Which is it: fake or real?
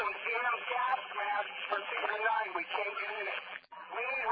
fake